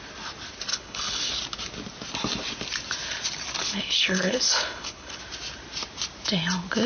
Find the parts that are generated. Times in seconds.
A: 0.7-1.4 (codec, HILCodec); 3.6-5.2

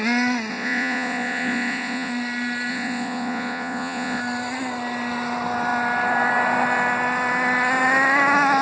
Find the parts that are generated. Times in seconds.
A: 0.5-2.1 (vocoder, Vocos); 2.7-4.2

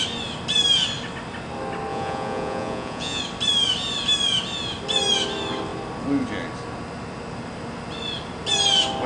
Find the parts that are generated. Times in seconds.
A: 1.9-3.2 (vocoder, Vocos)

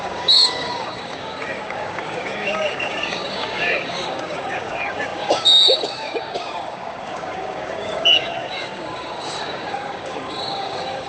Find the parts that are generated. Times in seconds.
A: 0.0-11.1 (codec, DAC)

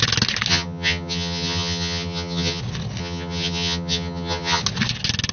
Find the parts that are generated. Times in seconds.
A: 0.5-2.6 (vocoder, HiFi-GAN); 3.0-4.6

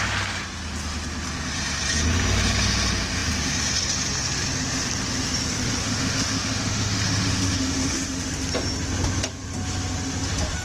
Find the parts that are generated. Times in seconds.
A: 5.8-8.3 (autoencoder, DAC-VAE)

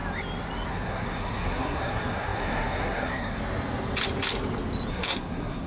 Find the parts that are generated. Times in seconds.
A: 0.7-3.4 (codec, SNAC); 4.9-5.7

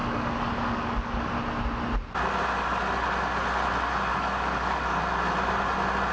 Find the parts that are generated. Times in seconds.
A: 0.0-1.3 (codec, DAC); 4.1-5.0